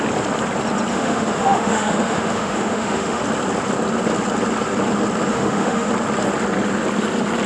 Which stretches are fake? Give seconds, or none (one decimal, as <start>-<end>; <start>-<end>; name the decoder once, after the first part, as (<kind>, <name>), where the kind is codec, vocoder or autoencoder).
0.9-3.2 (autoencoder, DAC-VAE); 5.3-5.9